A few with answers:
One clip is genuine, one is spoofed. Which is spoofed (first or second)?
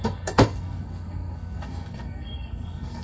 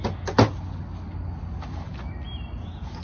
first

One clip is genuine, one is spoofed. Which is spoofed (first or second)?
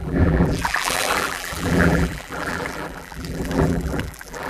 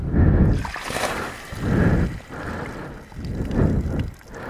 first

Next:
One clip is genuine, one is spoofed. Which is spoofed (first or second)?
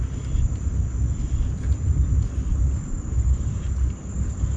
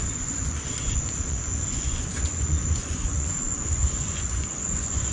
second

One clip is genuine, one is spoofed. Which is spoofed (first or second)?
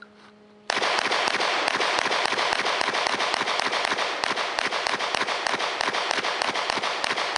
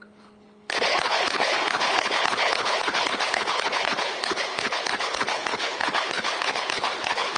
second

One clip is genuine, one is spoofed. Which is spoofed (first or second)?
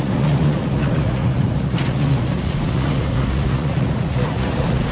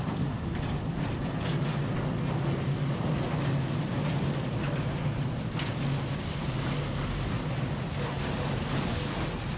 first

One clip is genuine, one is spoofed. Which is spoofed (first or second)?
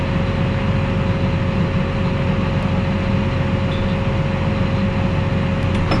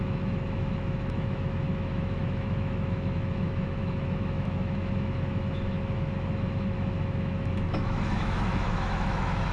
second